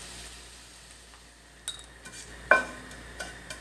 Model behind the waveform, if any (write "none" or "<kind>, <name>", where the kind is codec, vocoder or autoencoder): none